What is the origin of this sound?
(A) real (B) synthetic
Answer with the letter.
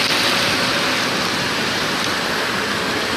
A